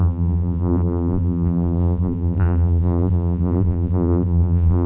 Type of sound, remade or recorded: remade